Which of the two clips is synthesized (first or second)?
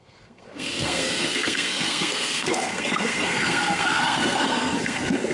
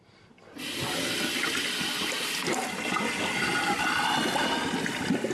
first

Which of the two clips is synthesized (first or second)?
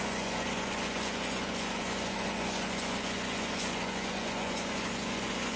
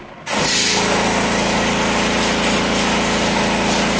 first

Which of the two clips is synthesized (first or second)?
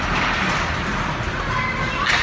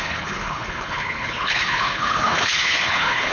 second